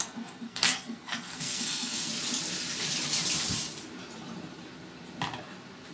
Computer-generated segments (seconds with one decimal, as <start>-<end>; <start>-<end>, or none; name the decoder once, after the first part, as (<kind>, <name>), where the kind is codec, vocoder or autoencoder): 0.0-2.1 (codec, SNAC)